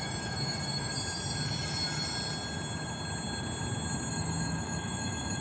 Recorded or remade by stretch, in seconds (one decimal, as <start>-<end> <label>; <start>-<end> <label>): 0.0-0.9 remade; 0.9-4.1 recorded; 4.1-5.4 remade